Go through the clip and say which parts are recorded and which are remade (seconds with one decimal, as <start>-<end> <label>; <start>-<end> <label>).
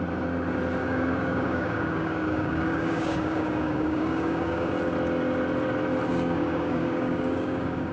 0.0-0.8 recorded; 0.8-4.7 remade; 4.7-6.1 recorded; 6.1-7.9 remade